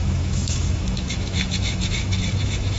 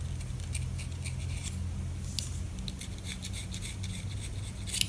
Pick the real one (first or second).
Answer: second